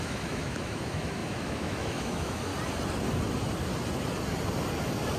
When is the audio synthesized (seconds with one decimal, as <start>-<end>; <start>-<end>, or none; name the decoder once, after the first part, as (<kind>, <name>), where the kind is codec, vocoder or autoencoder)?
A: 0.0-2.5 (autoencoder, DAC-VAE)